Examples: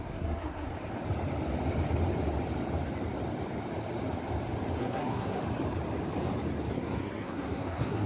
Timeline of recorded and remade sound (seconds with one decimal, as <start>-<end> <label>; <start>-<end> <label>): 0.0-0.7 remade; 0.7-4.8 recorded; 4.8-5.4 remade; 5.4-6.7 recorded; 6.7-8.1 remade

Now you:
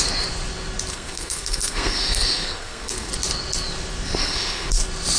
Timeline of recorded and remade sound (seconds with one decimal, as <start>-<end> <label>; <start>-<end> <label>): 0.0-0.9 recorded; 0.9-3.1 remade; 3.1-4.2 recorded; 4.2-4.7 remade; 4.7-5.2 recorded

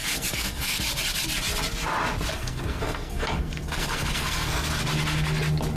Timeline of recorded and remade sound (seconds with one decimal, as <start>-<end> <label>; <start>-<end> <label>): 0.0-0.8 remade; 0.8-2.3 recorded; 2.3-4.7 remade; 4.7-5.8 recorded

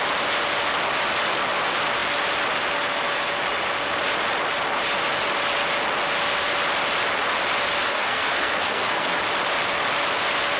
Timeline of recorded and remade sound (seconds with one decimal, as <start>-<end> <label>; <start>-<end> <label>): 0.0-7.9 recorded; 7.9-9.2 remade; 9.2-10.6 recorded

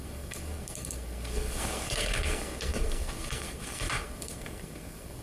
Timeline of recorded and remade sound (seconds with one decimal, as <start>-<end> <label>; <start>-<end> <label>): 0.0-5.2 remade